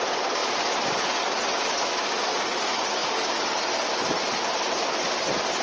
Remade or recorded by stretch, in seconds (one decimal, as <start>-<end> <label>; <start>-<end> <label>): 0.0-5.6 recorded